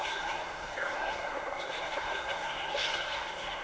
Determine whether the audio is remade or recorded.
remade